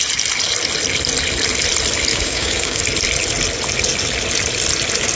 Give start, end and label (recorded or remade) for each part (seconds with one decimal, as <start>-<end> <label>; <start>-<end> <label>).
0.0-2.1 recorded; 2.1-2.8 remade; 2.8-5.2 recorded